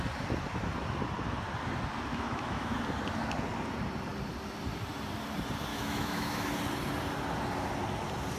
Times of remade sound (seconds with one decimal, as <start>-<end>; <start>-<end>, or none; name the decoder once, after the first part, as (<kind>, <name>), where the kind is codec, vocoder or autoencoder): 2.1-2.8 (autoencoder, DAC-VAE); 5.7-6.5